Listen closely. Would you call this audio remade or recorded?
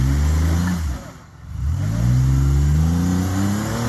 recorded